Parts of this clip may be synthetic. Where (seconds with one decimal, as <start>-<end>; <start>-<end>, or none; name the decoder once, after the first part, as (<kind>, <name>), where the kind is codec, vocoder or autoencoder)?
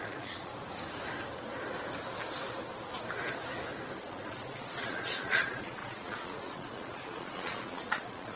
0.0-0.5 (vocoder, Vocos); 4.0-8.4